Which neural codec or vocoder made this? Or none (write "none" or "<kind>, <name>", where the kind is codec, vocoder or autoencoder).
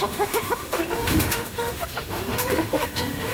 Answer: autoencoder, DAC-VAE